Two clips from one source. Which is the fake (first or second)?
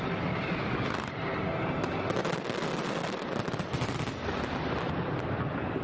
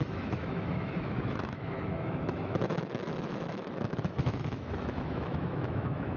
second